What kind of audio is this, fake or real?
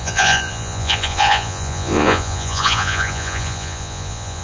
fake